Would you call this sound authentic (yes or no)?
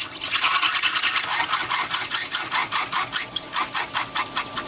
yes